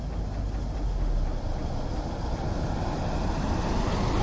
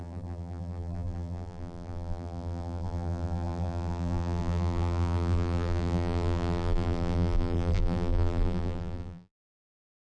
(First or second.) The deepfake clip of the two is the second